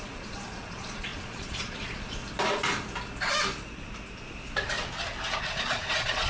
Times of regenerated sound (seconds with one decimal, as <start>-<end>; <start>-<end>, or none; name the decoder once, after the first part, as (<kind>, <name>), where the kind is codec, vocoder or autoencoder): 0.0-2.2 (vocoder, Vocos); 5.4-6.3